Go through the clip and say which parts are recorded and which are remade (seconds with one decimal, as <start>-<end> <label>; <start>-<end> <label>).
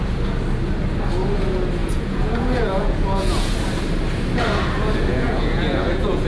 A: 0.0-1.8 recorded; 1.8-3.5 remade; 3.5-5.1 recorded; 5.1-6.3 remade